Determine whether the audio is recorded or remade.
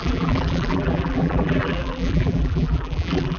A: remade